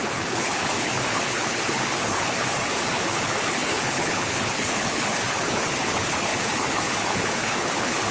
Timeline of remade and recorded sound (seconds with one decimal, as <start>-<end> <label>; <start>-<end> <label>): 0.0-8.1 remade